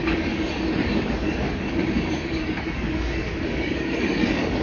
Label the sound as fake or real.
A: fake